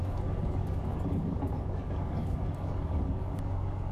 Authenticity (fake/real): fake